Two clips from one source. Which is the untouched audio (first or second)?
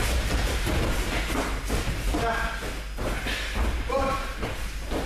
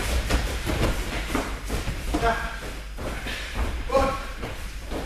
first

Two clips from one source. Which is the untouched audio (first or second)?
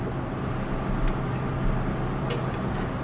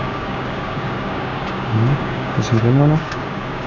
first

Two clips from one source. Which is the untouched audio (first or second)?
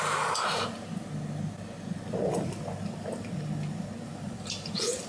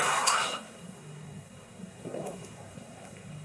first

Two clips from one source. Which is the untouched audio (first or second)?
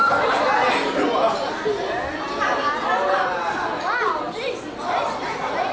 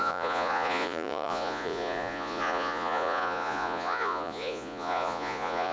first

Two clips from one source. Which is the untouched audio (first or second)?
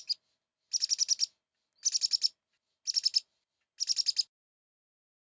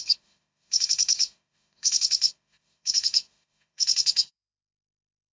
first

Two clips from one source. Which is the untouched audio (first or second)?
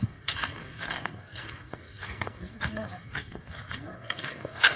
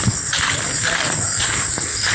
second